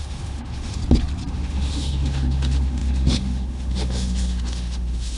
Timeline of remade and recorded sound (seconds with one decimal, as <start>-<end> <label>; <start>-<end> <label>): 0.0-0.8 remade; 0.8-1.3 recorded; 1.3-5.2 remade